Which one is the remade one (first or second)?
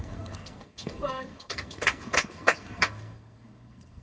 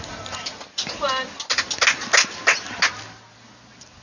first